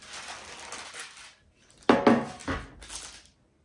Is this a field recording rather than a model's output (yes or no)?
yes